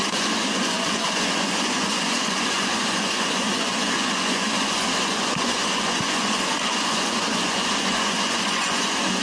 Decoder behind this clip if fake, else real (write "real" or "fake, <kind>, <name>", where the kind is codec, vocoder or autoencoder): fake, vocoder, Vocos